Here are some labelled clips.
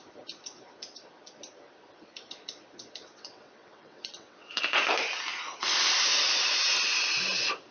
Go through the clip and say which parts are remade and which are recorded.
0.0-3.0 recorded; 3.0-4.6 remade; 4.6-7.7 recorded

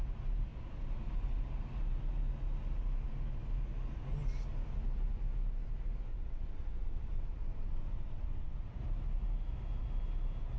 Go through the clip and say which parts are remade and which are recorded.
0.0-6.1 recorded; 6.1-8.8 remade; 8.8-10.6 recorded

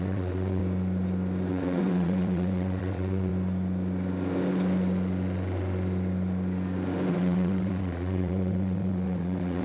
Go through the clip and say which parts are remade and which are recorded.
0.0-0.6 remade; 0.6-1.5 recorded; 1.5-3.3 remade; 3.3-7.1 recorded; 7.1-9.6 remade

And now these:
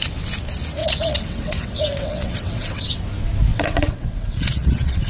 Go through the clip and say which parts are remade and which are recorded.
0.0-0.8 recorded; 0.8-3.0 remade; 3.0-3.5 recorded; 3.5-5.1 remade

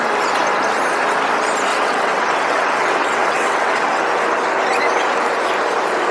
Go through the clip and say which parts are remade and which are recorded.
0.0-1.7 recorded; 1.7-4.0 remade; 4.0-6.1 recorded